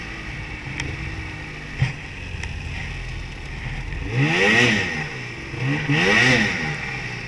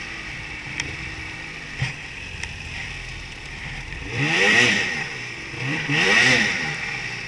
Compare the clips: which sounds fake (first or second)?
second